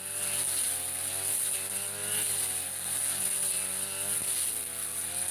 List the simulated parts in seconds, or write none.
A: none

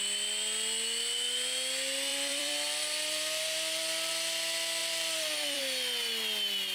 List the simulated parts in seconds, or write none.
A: 2.1-4.1; 4.8-5.6

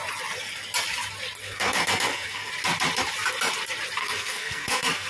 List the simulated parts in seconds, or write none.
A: 1.4-2.5; 4.0-5.1

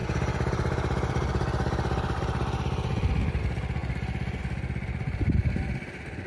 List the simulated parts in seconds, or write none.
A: none

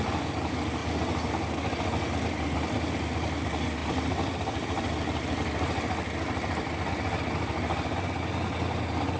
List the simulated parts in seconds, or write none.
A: 3.8-6.9